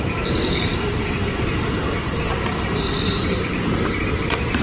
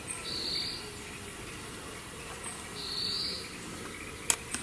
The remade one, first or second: first